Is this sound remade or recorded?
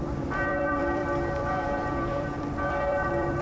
remade